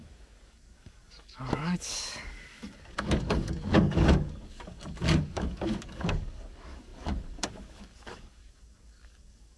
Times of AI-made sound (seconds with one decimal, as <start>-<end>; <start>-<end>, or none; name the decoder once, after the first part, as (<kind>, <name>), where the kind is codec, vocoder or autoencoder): 0.0-9.6 (codec, DAC)